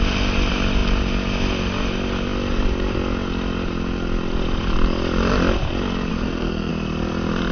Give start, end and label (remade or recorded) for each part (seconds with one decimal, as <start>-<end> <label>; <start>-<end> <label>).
0.0-6.1 recorded; 6.1-6.7 remade; 6.7-7.5 recorded